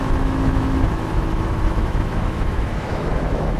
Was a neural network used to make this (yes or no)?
yes